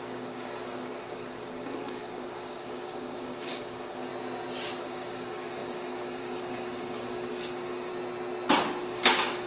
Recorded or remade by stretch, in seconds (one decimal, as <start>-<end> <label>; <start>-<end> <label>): 0.0-4.1 remade; 4.1-4.8 recorded; 4.8-7.9 remade; 7.9-8.8 recorded; 8.8-9.5 remade